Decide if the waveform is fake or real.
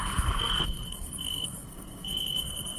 fake